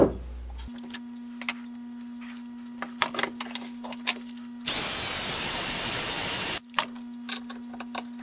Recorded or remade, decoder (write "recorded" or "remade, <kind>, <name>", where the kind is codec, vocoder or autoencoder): recorded